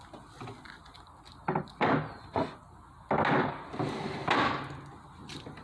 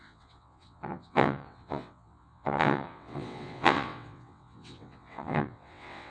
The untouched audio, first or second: first